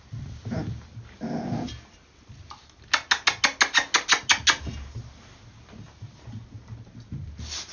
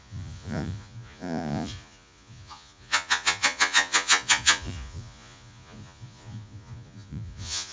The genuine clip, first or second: first